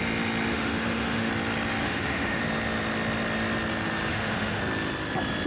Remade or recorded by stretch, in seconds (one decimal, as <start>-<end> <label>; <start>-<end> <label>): 0.0-0.5 recorded; 0.5-1.3 remade; 1.3-1.8 recorded; 1.8-2.4 remade; 2.4-4.1 recorded; 4.1-4.6 remade; 4.6-5.5 recorded